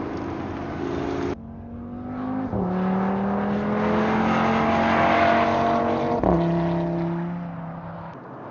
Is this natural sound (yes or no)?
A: yes